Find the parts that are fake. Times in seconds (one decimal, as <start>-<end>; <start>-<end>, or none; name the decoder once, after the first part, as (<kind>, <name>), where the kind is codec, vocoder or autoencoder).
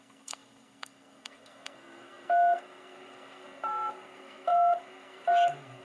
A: 0.0-5.8 (codec, SNAC)